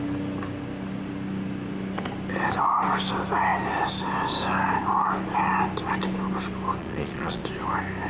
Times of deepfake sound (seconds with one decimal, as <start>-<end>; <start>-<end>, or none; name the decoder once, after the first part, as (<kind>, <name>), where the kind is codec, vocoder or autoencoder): 6.8-7.4 (vocoder, Vocos)